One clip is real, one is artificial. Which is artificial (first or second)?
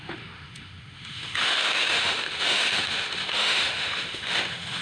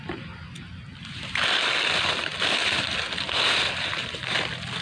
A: first